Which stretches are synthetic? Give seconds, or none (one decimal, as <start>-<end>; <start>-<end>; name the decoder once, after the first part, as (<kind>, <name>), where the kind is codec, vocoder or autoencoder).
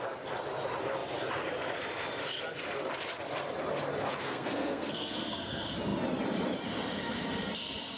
4.2-5.5 (codec, SNAC)